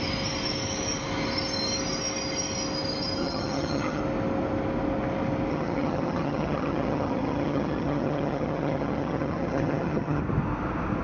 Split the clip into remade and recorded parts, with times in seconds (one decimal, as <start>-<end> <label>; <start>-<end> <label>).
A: 0.0-3.2 recorded; 3.2-4.0 remade; 4.0-5.5 recorded; 5.5-10.2 remade; 10.2-11.0 recorded